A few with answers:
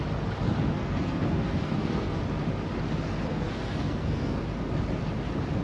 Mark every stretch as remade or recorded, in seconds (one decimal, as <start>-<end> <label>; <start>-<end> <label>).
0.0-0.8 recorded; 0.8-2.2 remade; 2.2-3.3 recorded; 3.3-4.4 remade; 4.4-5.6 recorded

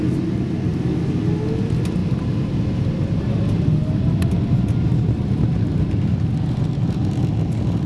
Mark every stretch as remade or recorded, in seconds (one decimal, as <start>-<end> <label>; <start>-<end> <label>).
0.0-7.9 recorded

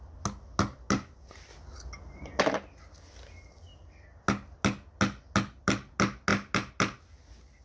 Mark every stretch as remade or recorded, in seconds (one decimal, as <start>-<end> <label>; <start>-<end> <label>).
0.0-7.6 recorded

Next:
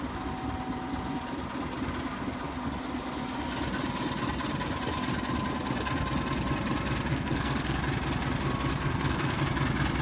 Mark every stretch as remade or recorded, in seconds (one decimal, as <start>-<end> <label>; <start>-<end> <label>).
0.0-7.1 recorded; 7.1-7.8 remade; 7.8-8.7 recorded; 8.7-9.4 remade; 9.4-10.0 recorded

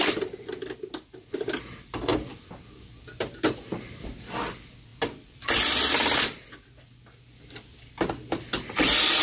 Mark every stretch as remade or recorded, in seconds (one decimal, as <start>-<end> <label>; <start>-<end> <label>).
0.0-9.2 recorded